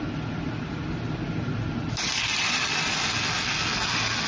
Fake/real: real